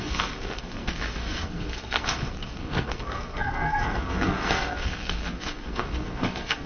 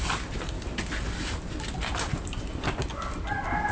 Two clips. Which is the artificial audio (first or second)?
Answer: first